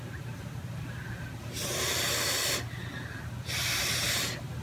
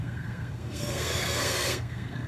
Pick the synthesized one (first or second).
second